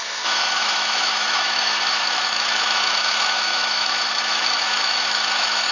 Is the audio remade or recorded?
remade